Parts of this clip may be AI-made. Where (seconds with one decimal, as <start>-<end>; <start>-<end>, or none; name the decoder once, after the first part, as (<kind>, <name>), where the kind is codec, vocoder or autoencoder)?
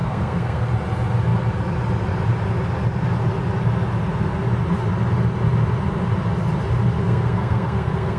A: 0.0-0.7 (codec, SNAC); 7.0-8.2